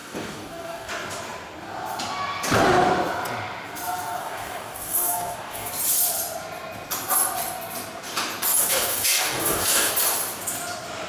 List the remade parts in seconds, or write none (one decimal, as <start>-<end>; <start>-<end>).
0.0-0.9; 4.2-5.7; 8.6-9.9